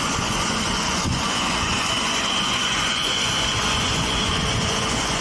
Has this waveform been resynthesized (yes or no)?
yes